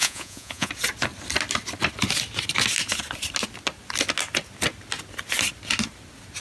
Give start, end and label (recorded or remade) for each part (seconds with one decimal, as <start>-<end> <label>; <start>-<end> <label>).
0.0-0.7 remade; 0.7-6.4 recorded